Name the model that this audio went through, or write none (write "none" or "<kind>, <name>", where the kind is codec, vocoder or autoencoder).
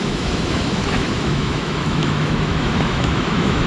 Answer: autoencoder, DAC-VAE